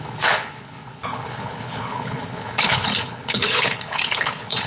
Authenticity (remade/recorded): remade